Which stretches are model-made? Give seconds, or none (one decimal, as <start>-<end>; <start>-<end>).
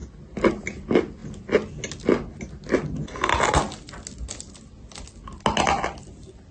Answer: 0.0-0.6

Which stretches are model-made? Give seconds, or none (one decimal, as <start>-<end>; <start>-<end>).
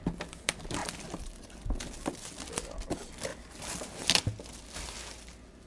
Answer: 0.8-2.5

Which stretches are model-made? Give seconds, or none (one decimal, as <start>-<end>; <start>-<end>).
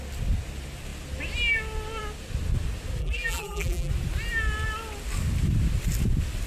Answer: 3.0-3.9